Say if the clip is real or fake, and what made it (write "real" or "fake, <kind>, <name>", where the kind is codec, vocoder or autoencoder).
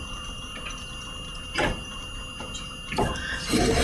real